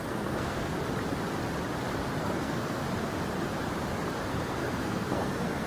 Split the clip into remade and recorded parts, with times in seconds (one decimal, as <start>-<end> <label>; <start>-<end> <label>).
0.0-0.8 remade; 0.8-2.2 recorded; 2.2-2.8 remade; 2.8-4.3 recorded; 4.3-5.7 remade